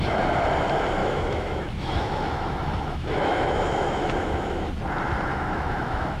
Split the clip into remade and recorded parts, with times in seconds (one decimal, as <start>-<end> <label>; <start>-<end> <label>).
0.0-1.0 recorded; 1.0-4.7 remade; 4.7-5.3 recorded; 5.3-6.2 remade